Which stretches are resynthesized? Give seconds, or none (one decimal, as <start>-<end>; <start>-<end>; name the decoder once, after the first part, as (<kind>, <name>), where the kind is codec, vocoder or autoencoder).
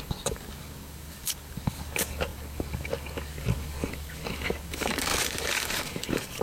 0.0-6.4 (codec, DAC)